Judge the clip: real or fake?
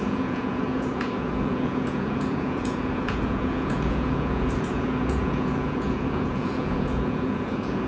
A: fake